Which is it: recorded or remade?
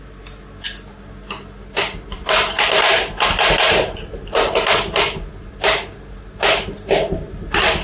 recorded